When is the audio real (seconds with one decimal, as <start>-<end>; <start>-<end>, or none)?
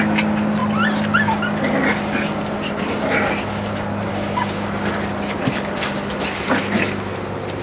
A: 0.0-4.1; 4.9-7.6